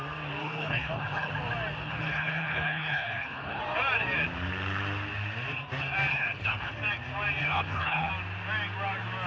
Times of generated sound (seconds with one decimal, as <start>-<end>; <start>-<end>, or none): 0.4-1.3; 1.8-3.6; 6.1-6.7; 7.4-8.1